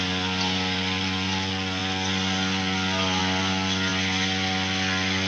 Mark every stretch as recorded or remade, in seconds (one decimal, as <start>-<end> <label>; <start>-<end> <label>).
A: 0.0-5.3 recorded